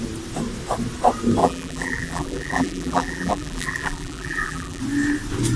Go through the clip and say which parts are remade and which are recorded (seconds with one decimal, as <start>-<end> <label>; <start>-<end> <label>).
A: 0.0-1.4 recorded; 1.4-4.8 remade; 4.8-5.6 recorded